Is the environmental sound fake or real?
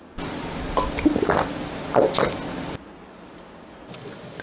real